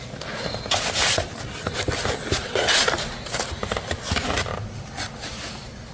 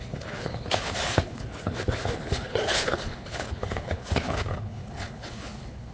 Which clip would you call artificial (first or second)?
second